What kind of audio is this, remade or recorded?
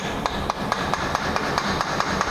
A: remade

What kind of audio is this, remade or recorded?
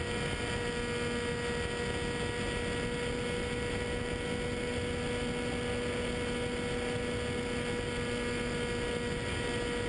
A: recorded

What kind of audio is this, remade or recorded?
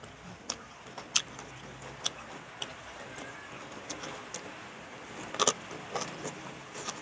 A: recorded